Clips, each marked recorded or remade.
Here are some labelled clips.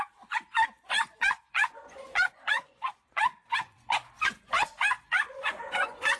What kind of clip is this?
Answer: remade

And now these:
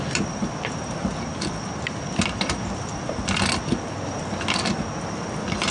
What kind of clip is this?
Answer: recorded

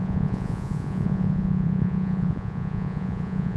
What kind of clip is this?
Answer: remade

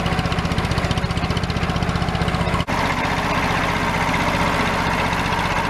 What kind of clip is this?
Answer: recorded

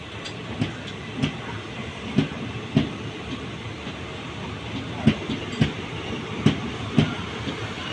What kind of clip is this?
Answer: recorded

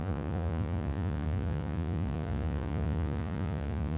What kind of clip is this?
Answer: remade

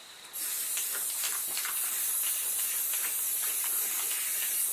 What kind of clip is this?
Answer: recorded